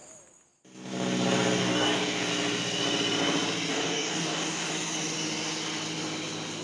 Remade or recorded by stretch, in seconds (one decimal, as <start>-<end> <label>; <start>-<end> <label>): 0.0-1.6 recorded; 1.6-2.3 remade; 2.3-3.7 recorded; 3.7-4.7 remade; 4.7-6.6 recorded